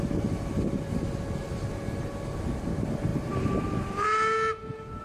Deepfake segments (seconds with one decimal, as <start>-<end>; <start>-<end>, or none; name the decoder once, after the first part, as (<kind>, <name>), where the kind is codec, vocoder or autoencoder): none